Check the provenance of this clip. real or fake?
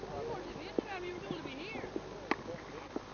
real